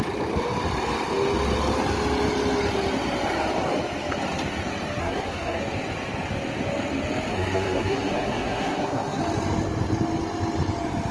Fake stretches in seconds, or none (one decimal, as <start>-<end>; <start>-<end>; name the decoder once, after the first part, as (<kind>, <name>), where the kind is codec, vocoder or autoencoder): 5.0-5.6 (codec, SNAC); 7.3-9.2